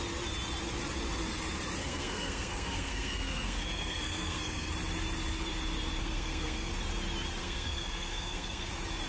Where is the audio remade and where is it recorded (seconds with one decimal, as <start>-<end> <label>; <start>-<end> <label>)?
0.0-1.8 recorded; 1.8-4.7 remade; 4.7-6.0 recorded; 6.0-6.7 remade; 6.7-7.4 recorded; 7.4-8.7 remade; 8.7-9.1 recorded